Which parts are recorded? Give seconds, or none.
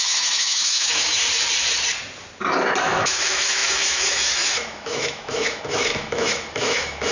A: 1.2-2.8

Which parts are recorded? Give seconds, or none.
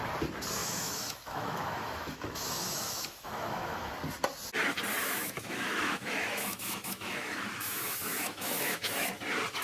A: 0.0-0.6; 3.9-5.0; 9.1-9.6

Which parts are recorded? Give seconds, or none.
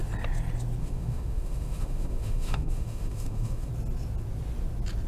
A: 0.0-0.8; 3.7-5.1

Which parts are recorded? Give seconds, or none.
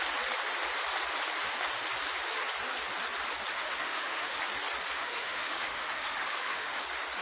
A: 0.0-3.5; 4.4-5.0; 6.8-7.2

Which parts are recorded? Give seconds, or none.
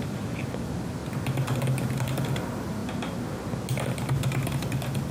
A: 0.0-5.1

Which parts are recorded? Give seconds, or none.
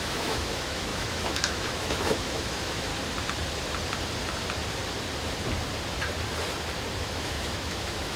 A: 2.9-7.0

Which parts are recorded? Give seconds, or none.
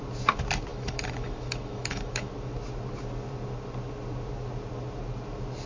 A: 0.0-0.7; 2.3-5.7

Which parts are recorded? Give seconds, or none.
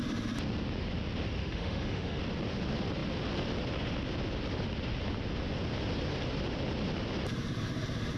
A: 0.0-1.4; 2.2-8.2